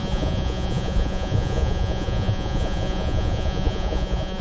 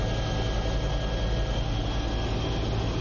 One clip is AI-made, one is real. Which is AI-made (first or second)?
first